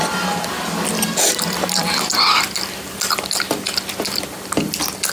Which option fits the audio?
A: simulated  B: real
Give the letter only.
B